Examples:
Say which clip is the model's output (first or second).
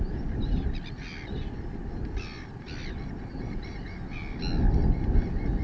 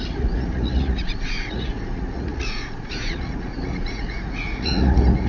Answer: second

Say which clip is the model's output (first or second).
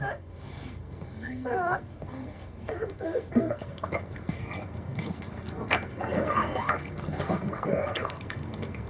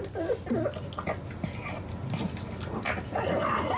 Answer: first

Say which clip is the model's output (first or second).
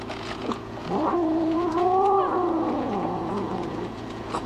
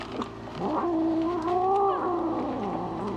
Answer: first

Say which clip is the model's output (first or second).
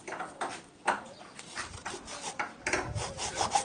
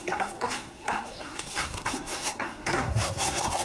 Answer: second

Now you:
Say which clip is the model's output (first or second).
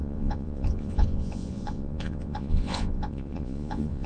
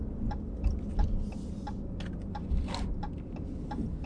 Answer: first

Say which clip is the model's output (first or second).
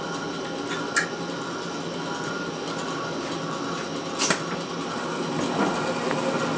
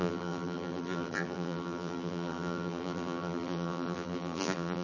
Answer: second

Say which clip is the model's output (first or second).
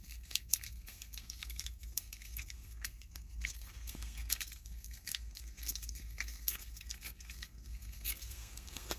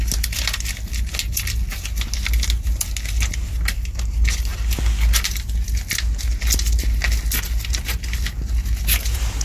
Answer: first